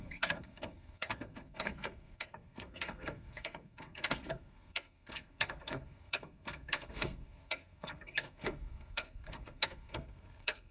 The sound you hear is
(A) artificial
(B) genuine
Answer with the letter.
A